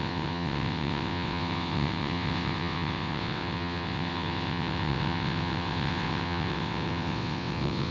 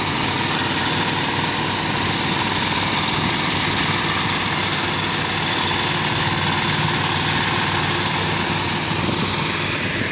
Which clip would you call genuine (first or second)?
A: second